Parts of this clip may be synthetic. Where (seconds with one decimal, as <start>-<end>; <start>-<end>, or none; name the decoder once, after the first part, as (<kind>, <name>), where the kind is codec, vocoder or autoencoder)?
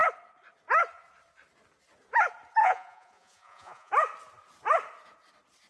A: 2.6-3.9 (vocoder, Vocos)